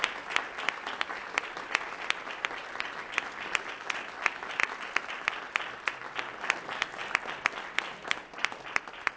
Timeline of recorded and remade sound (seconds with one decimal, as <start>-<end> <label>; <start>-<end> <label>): 0.0-4.6 remade; 4.6-5.3 recorded; 5.3-7.0 remade; 7.0-8.1 recorded; 8.1-9.2 remade